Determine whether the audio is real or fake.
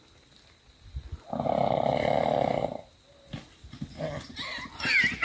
real